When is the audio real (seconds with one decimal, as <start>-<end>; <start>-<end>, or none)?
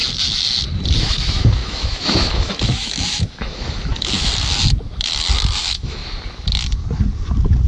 0.0-1.0; 4.3-5.6; 6.0-7.7